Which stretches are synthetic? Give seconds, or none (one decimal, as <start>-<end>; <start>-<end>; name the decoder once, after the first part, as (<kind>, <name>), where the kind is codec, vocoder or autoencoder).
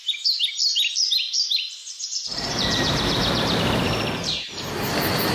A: 1.8-5.3 (vocoder, BigVGAN v2)